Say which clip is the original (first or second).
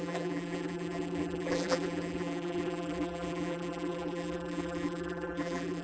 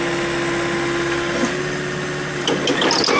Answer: second